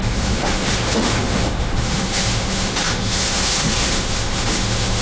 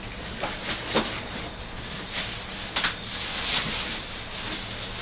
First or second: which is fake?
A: first